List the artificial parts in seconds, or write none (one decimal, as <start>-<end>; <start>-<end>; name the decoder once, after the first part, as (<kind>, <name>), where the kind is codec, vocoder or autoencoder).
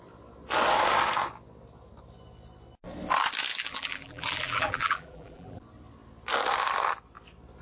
3.5-5.6 (vocoder, BigVGAN v2)